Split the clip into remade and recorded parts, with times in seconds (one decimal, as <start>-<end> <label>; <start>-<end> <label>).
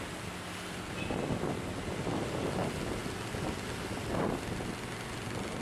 0.0-5.6 recorded